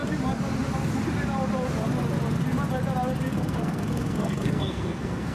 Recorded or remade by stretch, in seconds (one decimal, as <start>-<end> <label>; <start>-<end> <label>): 0.0-3.2 recorded; 3.2-5.3 remade